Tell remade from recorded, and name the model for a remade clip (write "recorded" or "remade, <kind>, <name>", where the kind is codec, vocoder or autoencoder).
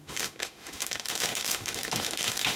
remade, autoencoder, DAC-VAE